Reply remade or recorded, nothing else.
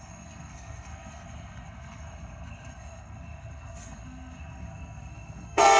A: remade